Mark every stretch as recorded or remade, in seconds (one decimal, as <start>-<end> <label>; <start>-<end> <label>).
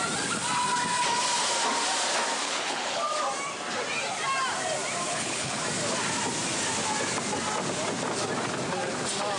0.0-2.4 recorded; 2.4-3.0 remade; 3.0-5.1 recorded; 5.1-5.6 remade; 5.6-9.4 recorded